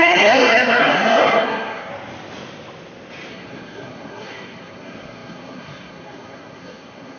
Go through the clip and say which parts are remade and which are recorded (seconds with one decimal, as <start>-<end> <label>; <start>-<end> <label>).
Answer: 0.0-1.9 remade; 1.9-3.3 recorded; 3.3-7.2 remade

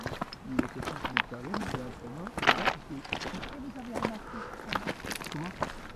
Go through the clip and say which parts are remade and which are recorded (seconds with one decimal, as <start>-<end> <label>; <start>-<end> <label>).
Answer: 0.0-2.1 remade; 2.1-6.0 recorded

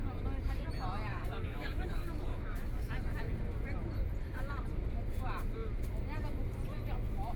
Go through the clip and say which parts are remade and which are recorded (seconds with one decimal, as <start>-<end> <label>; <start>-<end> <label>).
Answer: 0.0-1.1 recorded; 1.1-2.9 remade; 2.9-7.4 recorded

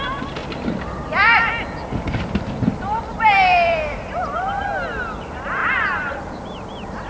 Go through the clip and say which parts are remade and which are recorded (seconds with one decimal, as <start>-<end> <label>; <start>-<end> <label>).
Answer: 0.0-0.4 recorded; 0.4-4.7 remade; 4.7-5.6 recorded; 5.6-6.2 remade; 6.2-7.1 recorded